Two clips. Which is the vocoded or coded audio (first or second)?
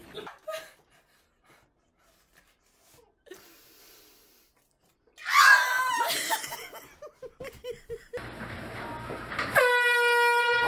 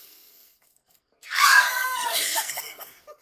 second